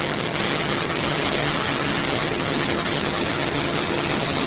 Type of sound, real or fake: fake